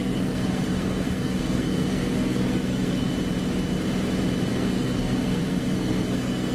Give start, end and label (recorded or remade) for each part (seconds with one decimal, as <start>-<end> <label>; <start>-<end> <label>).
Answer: 0.0-3.1 remade; 3.1-4.5 recorded; 4.5-6.5 remade